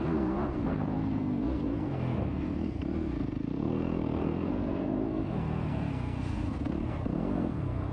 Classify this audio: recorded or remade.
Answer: remade